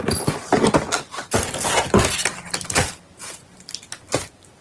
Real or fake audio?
real